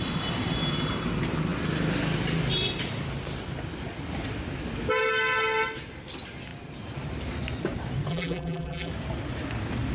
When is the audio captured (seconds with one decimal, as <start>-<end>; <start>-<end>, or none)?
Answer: 0.0-8.1; 8.9-9.9